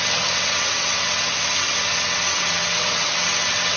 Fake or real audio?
fake